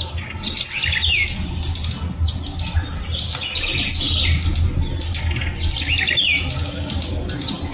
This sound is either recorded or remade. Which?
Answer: recorded